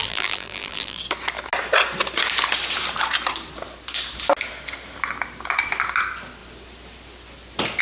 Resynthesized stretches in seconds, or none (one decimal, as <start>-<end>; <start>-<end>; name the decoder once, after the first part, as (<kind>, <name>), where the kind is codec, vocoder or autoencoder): 0.0-1.0 (vocoder, BigVGAN v2)